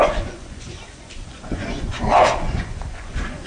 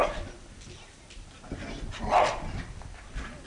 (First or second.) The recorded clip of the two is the second